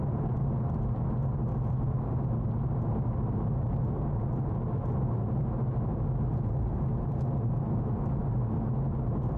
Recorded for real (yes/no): yes